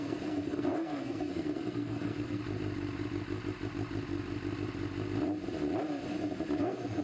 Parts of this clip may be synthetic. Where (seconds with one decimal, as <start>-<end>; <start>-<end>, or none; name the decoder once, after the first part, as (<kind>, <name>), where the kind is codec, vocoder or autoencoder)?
0.0-2.4 (codec, SNAC); 6.6-7.0